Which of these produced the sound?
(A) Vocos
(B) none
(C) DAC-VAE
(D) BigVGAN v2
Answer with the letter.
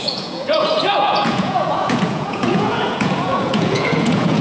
A